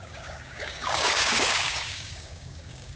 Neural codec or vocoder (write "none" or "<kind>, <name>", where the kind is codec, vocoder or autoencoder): codec, DAC